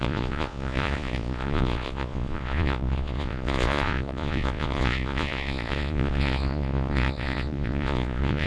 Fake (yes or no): yes